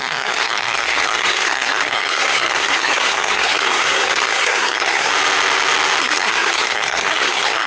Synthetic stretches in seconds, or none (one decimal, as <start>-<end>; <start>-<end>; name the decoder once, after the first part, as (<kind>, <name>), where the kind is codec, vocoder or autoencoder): 0.0-5.1 (codec, SNAC); 6.0-7.7